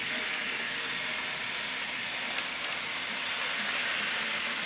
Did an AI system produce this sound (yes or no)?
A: no